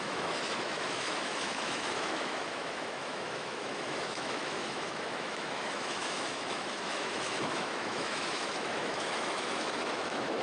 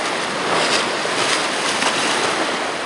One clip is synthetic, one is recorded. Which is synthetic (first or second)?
first